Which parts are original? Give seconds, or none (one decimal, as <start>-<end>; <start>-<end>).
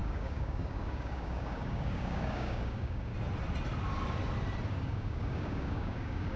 3.1-4.7